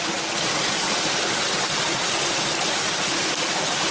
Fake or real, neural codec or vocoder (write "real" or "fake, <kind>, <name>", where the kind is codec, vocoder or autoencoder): real